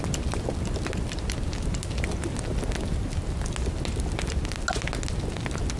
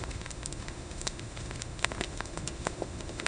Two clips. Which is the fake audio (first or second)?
second